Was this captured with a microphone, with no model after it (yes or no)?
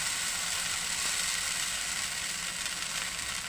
yes